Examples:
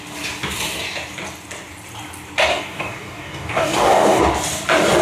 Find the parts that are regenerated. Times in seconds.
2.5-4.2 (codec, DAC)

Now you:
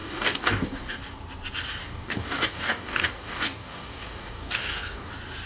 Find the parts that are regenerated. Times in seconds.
0.0-1.0 (codec, DAC); 1.8-5.1

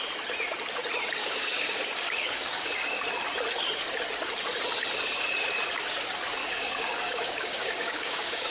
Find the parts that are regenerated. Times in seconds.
1.2-3.0 (codec, DAC); 6.4-8.5

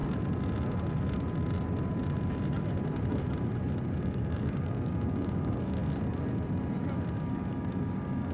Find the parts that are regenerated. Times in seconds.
4.0-5.8 (codec, DAC); 7.3-8.3

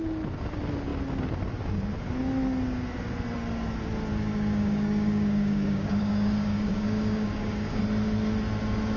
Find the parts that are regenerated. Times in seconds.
4.1-7.8 (codec, DAC)